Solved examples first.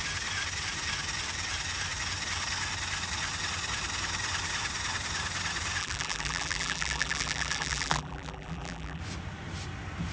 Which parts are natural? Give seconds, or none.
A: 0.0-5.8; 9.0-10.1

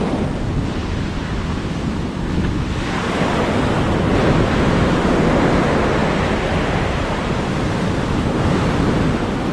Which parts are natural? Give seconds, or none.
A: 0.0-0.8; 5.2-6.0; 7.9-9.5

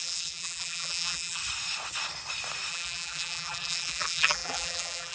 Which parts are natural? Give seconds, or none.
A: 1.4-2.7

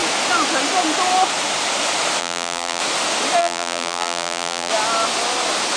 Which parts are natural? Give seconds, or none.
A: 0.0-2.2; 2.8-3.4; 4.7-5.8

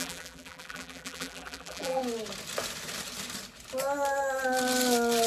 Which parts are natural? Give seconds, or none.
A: 2.0-5.3